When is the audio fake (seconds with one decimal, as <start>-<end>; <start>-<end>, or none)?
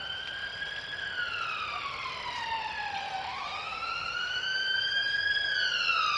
3.3-5.3